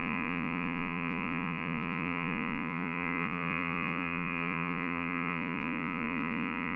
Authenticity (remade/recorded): remade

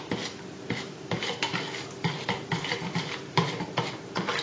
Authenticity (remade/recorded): recorded